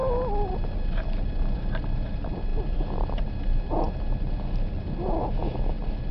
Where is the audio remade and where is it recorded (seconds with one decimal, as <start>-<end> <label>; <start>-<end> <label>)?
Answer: 0.0-6.1 recorded